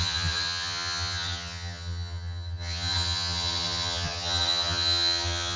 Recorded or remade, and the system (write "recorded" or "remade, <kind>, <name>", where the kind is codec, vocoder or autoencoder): remade, vocoder, HiFi-GAN